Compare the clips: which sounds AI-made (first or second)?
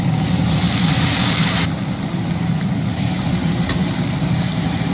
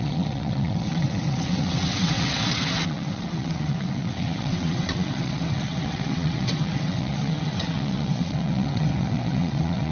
second